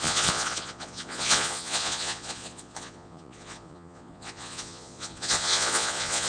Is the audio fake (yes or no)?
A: yes